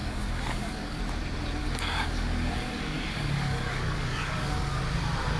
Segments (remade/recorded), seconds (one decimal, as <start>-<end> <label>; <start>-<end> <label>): 0.0-1.0 remade; 1.0-1.6 recorded; 1.6-4.8 remade; 4.8-5.4 recorded